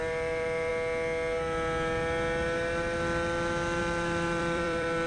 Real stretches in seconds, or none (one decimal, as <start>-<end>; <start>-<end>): 0.7-3.8